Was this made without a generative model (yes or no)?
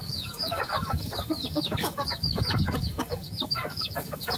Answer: no